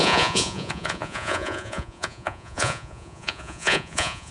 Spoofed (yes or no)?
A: yes